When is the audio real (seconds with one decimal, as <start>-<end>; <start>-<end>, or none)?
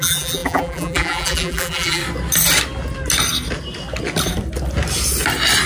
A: 2.0-5.7